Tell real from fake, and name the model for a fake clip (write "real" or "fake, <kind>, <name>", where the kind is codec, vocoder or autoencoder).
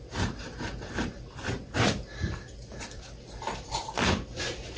fake, vocoder, BigVGAN v2